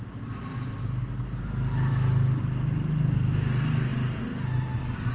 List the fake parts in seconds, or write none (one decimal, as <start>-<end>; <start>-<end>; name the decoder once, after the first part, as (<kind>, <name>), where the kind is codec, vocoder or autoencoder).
none